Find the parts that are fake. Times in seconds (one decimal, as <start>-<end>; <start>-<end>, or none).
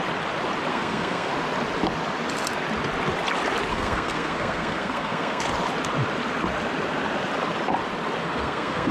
0.7-1.3; 3.7-5.4; 8.2-8.9